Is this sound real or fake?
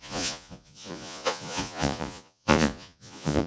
fake